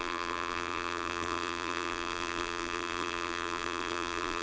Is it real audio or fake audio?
fake